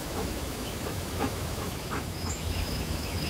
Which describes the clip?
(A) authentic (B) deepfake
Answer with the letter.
B